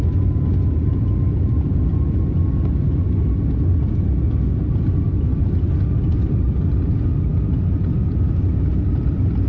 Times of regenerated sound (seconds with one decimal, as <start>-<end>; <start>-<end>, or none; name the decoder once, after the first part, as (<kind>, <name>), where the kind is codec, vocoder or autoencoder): none